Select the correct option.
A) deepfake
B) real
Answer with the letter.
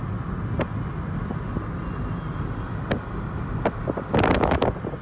B